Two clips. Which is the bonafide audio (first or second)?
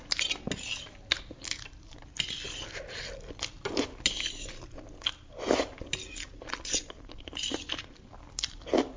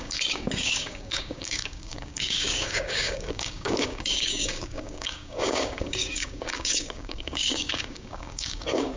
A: first